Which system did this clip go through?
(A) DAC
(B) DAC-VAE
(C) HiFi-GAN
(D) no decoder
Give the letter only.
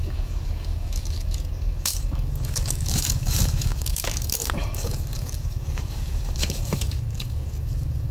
A